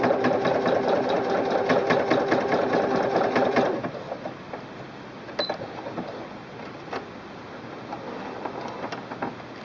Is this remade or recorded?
recorded